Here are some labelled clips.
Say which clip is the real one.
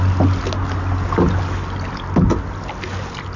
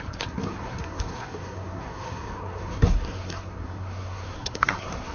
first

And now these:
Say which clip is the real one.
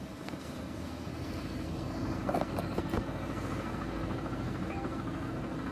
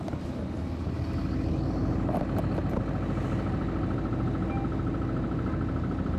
second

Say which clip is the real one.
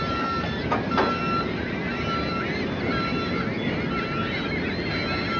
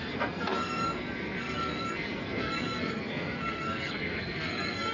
first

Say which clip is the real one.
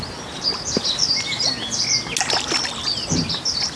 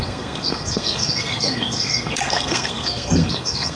first